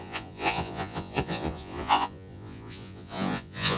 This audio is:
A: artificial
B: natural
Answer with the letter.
A